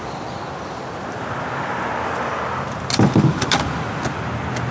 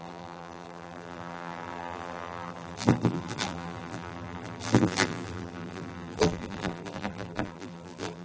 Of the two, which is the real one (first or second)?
first